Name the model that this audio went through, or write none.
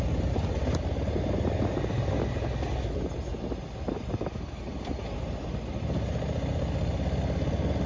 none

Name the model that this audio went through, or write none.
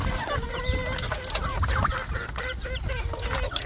none